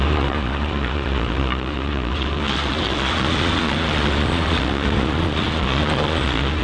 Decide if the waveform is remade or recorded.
remade